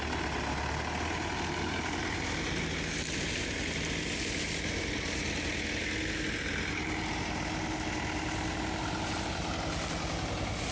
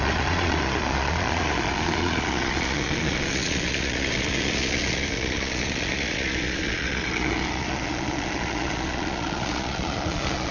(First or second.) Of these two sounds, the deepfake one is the second